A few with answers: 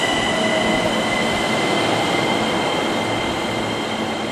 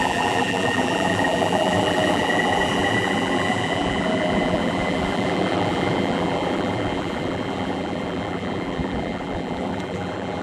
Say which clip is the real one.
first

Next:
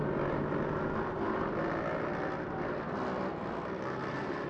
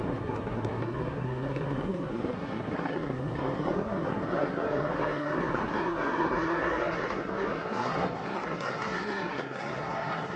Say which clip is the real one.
first